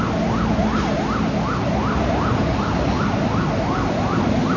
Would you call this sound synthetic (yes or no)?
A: no